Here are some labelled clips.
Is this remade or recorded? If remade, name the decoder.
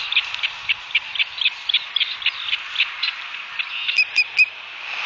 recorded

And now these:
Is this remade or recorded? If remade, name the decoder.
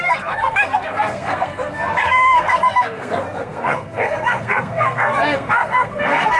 remade, codec, SNAC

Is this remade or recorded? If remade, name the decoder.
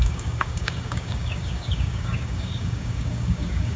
remade, codec, DAC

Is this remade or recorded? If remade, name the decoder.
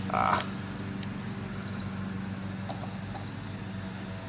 recorded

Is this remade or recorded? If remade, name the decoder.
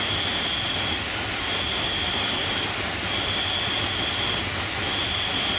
recorded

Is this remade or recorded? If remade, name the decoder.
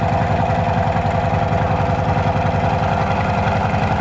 recorded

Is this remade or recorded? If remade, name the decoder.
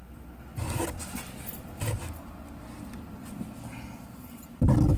recorded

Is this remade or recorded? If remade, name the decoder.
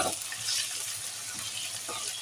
recorded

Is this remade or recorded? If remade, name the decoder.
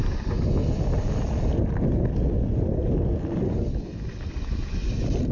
recorded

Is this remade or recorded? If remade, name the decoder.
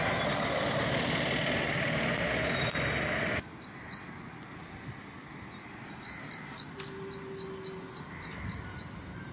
recorded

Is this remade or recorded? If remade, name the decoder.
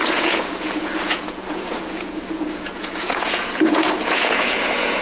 remade, vocoder, Vocos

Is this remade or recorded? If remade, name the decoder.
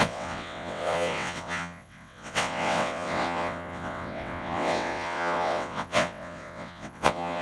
remade, vocoder, WaveNeXt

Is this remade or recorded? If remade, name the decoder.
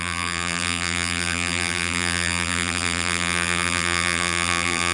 remade, vocoder, BigVGAN v2